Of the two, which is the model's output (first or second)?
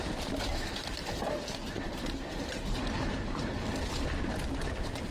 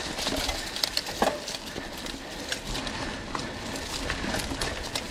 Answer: first